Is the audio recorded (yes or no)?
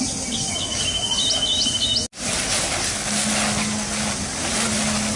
yes